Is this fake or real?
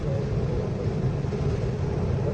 real